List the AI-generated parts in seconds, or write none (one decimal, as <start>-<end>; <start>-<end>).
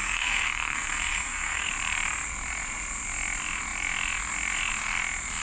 0.0-1.7